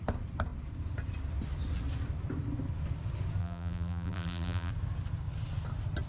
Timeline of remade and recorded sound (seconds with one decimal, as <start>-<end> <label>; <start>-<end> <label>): 0.0-3.4 recorded; 3.4-4.7 remade; 4.7-6.1 recorded